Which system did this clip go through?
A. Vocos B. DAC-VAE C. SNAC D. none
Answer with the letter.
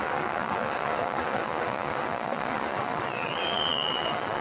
A